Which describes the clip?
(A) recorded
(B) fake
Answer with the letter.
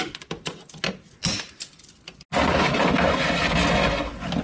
A